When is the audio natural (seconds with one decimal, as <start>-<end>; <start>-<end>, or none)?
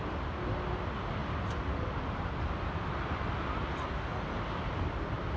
0.0-5.4